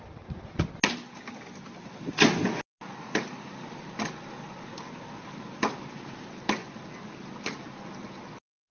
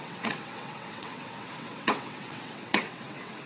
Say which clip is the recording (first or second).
first